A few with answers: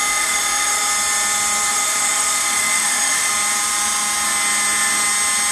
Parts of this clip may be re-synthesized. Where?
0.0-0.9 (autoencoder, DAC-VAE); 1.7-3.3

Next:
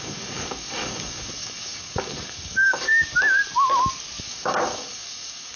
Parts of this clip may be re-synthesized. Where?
0.0-2.9 (codec, DAC); 4.2-5.6

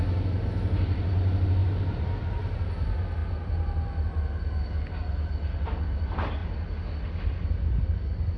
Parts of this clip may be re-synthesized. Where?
none